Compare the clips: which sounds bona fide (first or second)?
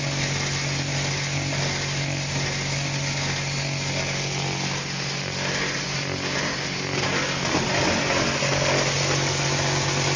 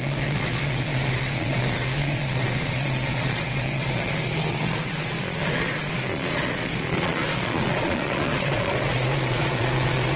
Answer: first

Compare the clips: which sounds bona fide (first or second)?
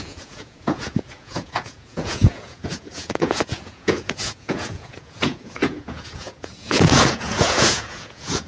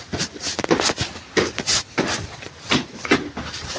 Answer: second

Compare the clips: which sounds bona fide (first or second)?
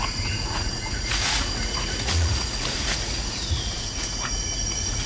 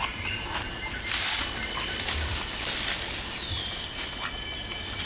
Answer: second